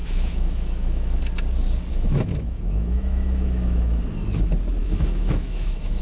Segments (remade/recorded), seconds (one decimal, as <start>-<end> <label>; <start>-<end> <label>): 0.0-1.2 remade; 1.2-1.9 recorded; 1.9-4.0 remade; 4.0-4.8 recorded; 4.8-6.0 remade